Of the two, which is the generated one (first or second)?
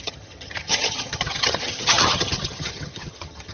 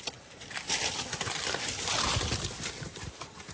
first